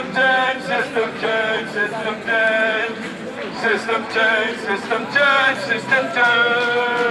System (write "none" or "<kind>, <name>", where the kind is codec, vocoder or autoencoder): none